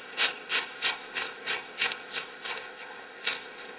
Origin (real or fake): fake